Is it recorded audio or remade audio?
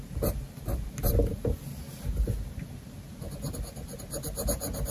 recorded